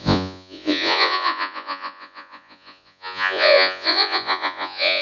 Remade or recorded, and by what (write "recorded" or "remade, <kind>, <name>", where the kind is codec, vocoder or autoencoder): remade, vocoder, Vocos